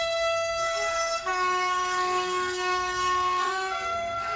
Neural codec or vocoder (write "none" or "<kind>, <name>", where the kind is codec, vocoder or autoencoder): codec, SNAC